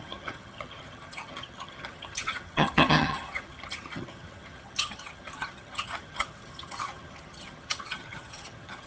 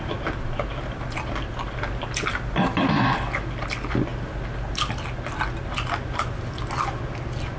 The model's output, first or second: first